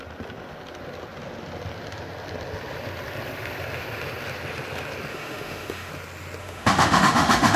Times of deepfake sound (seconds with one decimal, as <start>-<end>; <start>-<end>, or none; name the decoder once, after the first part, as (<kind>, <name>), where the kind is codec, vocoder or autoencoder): 5.1-5.9 (autoencoder, DAC-VAE); 6.4-7.6